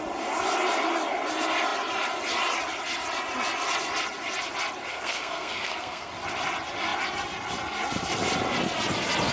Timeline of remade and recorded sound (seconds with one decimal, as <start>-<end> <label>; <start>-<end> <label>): 0.0-4.9 recorded; 4.9-6.1 remade; 6.1-9.3 recorded